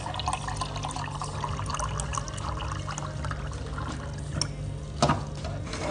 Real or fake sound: real